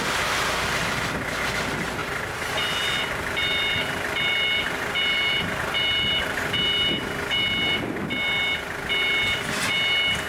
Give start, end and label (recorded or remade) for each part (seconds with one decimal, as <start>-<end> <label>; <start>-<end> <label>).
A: 0.0-2.0 recorded; 2.0-6.9 remade; 6.9-10.3 recorded

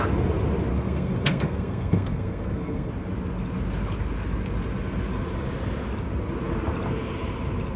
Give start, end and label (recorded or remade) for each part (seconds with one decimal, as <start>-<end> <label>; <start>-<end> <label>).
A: 0.0-0.7 recorded; 0.7-2.9 remade; 2.9-7.8 recorded

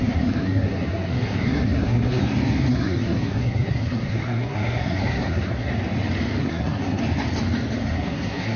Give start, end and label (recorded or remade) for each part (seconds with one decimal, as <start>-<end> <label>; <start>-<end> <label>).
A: 0.0-2.2 remade; 2.2-2.7 recorded; 2.7-5.7 remade; 5.7-6.4 recorded; 6.4-7.0 remade; 7.0-7.8 recorded; 7.8-8.6 remade

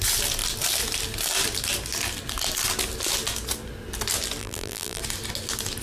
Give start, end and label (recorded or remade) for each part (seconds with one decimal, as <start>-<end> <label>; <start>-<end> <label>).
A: 0.0-4.4 recorded; 4.4-5.0 remade; 5.0-5.8 recorded

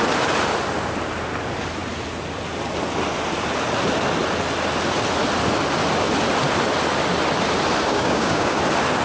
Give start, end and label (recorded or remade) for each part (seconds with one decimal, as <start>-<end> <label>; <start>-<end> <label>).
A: 0.0-7.9 recorded; 7.9-8.6 remade; 8.6-9.0 recorded

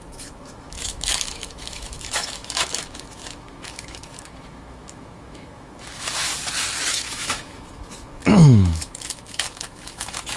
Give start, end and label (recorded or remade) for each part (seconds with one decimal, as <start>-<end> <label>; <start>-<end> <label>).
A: 0.0-6.3 remade; 6.3-6.9 recorded; 6.9-10.4 remade

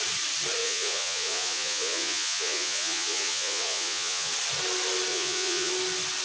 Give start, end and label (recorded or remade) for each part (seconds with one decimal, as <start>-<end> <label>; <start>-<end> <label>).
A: 0.0-0.6 recorded; 0.6-4.3 remade; 4.3-5.1 recorded; 5.1-5.7 remade; 5.7-6.2 recorded

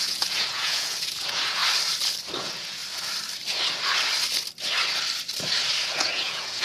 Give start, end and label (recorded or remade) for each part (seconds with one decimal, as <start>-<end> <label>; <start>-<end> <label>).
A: 0.0-1.6 remade; 1.6-2.4 recorded; 2.4-2.8 remade; 2.8-5.9 recorded; 5.9-6.6 remade